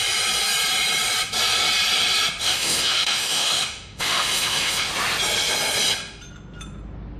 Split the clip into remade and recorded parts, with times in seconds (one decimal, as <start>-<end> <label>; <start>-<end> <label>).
0.0-2.4 recorded; 2.4-4.9 remade; 4.9-7.2 recorded

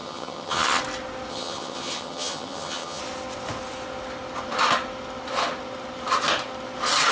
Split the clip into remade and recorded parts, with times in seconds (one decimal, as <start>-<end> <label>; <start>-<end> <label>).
0.0-0.8 remade; 0.8-1.3 recorded; 1.3-3.0 remade; 3.0-7.1 recorded

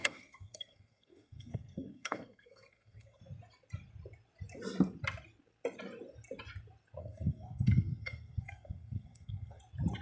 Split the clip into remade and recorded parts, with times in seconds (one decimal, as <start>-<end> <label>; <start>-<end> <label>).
0.0-3.2 remade; 3.2-7.0 recorded; 7.0-9.6 remade; 9.6-10.0 recorded

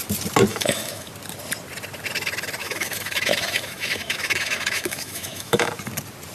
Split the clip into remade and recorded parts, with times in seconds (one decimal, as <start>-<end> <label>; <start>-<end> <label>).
0.0-0.5 recorded; 0.5-1.1 remade; 1.1-2.6 recorded; 2.6-5.7 remade; 5.7-6.3 recorded

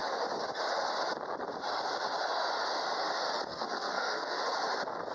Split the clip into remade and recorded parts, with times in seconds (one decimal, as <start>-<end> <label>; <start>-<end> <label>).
0.0-3.5 recorded; 3.5-4.4 remade; 4.4-5.1 recorded

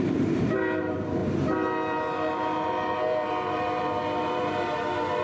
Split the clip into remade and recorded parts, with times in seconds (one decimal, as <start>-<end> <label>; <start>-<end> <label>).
0.0-5.2 remade

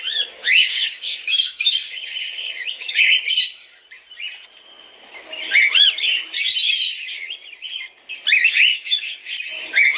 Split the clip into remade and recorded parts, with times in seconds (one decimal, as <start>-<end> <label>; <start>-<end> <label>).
0.0-0.4 recorded; 0.4-3.1 remade; 3.1-8.4 recorded; 8.4-9.0 remade; 9.0-10.0 recorded

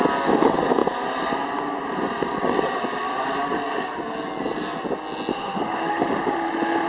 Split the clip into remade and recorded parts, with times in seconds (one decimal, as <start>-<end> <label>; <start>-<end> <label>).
0.0-5.3 recorded; 5.3-6.9 remade